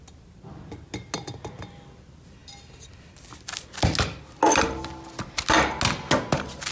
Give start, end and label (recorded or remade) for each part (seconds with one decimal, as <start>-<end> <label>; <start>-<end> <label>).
0.0-6.7 recorded